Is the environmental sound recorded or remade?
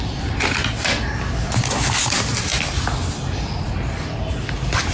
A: recorded